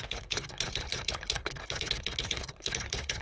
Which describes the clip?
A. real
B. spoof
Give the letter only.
B